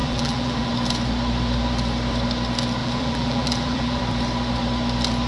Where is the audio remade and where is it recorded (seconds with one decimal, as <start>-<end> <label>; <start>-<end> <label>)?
0.0-0.7 remade; 0.7-2.8 recorded; 2.8-4.0 remade; 4.0-5.3 recorded